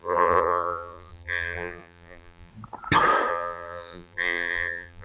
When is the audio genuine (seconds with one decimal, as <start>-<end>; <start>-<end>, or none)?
2.5-3.3